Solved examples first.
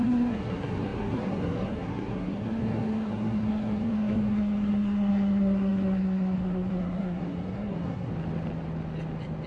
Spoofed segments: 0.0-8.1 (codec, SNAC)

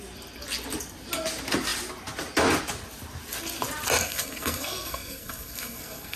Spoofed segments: 4.0-6.2 (codec, SNAC)

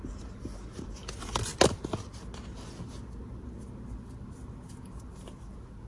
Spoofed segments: none

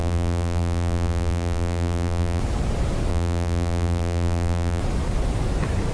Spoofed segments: 0.0-2.4 (vocoder, BigVGAN v2); 3.1-4.8

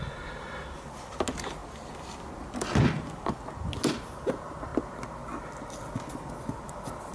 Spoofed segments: none

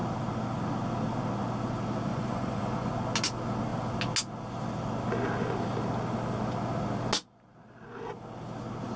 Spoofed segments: 2.1-2.9 (vocoder, Vocos)

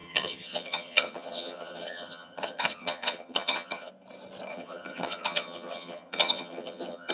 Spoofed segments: 0.0-3.9 (vocoder, HiFi-GAN); 4.5-7.1

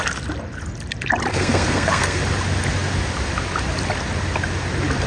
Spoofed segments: 1.3-2.2 (codec, SNAC)